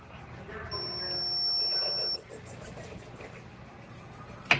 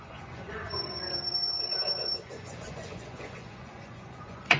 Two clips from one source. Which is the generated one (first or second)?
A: second